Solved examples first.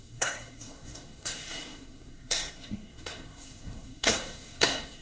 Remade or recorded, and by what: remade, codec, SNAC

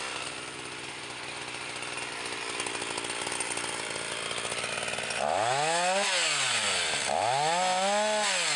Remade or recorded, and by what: recorded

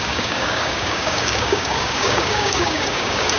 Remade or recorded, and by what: remade, codec, DAC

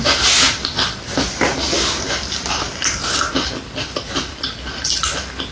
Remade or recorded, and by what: recorded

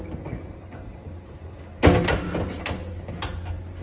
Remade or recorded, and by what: recorded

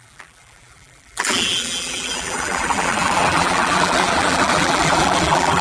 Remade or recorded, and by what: remade, vocoder, BigVGAN v2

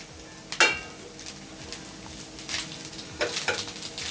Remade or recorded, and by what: recorded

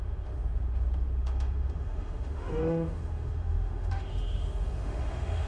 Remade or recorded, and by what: remade, autoencoder, DAC-VAE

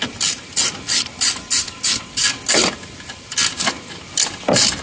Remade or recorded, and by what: recorded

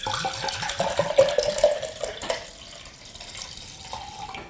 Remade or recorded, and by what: recorded